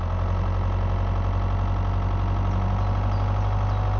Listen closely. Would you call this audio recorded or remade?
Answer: recorded